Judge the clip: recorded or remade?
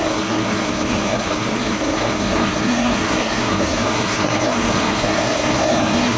remade